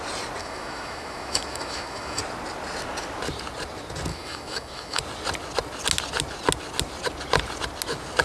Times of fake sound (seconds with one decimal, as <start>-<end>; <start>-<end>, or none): 0.4-2.2; 4.1-5.0